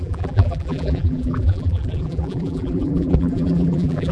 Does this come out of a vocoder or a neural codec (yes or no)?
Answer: yes